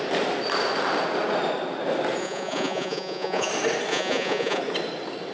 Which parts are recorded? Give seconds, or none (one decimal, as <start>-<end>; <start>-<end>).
0.0-2.2; 3.5-3.9; 4.6-5.3